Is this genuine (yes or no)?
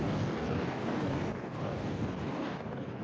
no